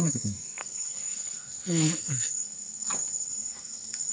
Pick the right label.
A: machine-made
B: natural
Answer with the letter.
A